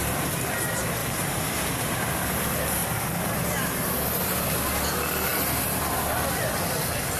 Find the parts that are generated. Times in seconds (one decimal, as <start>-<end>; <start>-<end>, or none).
1.0-1.7